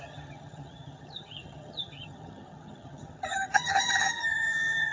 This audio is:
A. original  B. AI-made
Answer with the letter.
B